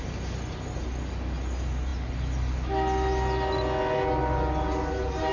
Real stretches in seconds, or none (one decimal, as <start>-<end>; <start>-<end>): 0.0-5.3